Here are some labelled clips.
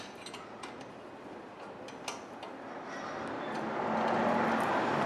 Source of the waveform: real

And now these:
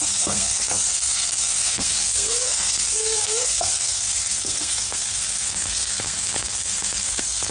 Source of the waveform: fake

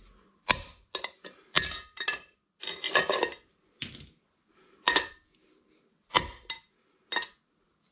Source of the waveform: real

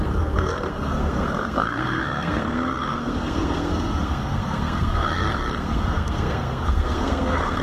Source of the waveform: fake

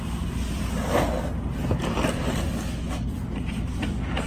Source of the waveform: real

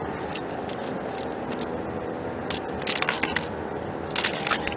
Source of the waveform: real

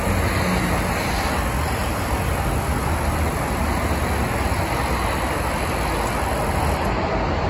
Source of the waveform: real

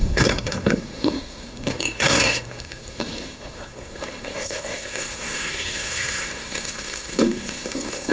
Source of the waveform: fake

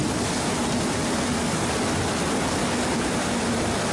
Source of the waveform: real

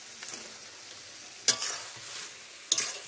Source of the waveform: real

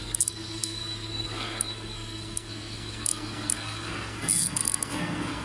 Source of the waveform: fake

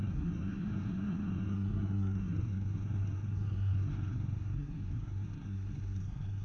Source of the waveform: fake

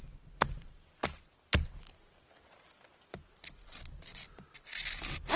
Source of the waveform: real